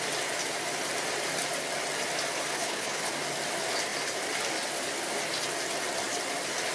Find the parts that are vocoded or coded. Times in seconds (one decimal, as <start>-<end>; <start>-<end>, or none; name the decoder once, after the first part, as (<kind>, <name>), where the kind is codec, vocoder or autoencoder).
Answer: 2.5-3.1 (codec, HILCodec)